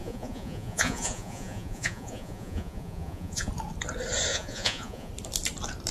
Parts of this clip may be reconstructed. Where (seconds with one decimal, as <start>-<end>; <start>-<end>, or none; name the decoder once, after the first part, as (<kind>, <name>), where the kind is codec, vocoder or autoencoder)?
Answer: 0.0-3.5 (vocoder, Vocos); 4.3-5.1